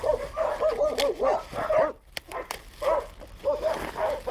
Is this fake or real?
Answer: real